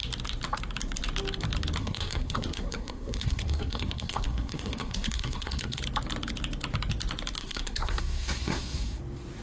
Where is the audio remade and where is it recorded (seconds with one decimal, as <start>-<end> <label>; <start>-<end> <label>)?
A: 0.0-1.8 recorded; 1.8-5.8 remade; 5.8-7.4 recorded; 7.4-9.0 remade; 9.0-9.4 recorded